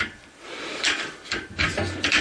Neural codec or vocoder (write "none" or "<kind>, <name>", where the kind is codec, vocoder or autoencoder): vocoder, BigVGAN v2